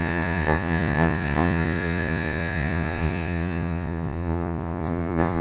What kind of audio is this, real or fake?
fake